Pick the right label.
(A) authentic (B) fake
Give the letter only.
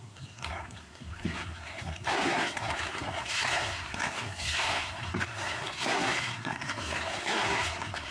B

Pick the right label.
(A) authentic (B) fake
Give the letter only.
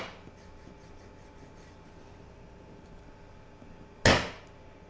A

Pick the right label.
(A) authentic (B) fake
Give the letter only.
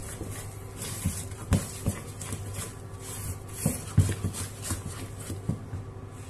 A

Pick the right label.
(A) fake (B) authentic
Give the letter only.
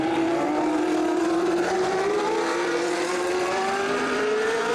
A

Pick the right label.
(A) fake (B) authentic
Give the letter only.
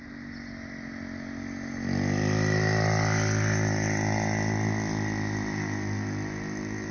B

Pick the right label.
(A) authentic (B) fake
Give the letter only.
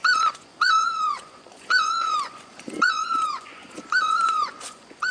B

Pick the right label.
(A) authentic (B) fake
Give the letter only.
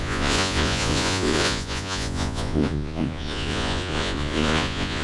B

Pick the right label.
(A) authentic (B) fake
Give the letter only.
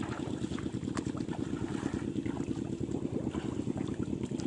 A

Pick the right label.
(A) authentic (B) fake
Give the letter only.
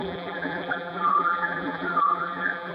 B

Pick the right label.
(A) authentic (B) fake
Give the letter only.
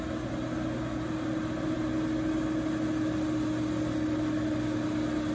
A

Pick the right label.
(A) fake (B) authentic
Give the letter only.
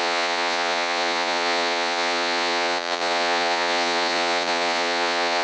A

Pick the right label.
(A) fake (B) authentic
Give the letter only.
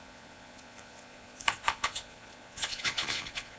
A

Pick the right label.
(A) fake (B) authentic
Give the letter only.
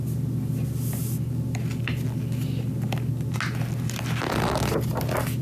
B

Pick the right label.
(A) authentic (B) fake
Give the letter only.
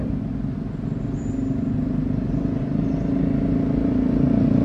A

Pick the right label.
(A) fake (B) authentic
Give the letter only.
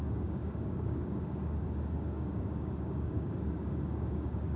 A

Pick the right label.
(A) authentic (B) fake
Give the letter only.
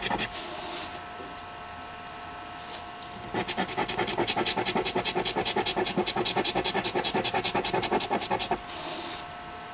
A